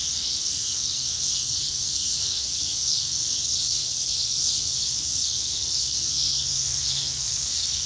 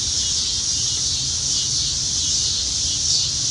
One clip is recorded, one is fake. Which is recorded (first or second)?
second